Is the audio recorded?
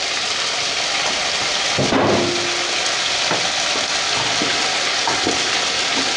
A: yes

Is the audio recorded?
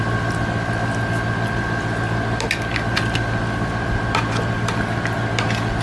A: yes